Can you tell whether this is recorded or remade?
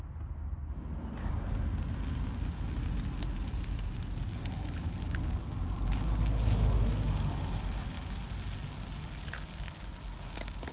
recorded